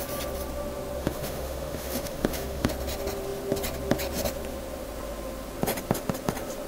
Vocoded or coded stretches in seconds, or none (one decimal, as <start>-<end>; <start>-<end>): 1.0-2.7